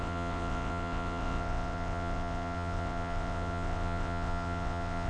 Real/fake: fake